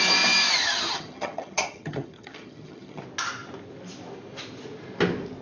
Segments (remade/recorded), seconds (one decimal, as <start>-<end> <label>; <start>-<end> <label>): 0.0-0.6 recorded; 0.6-3.0 remade; 3.0-5.4 recorded